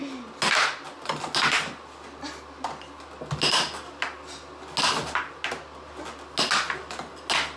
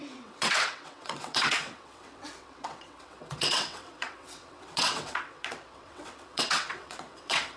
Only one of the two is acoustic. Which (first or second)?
first